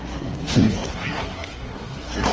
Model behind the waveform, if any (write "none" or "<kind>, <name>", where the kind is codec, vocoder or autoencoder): codec, SNAC